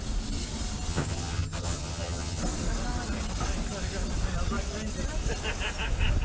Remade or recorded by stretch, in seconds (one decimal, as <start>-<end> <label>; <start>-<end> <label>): 0.0-0.9 recorded; 0.9-2.4 remade; 2.4-6.2 recorded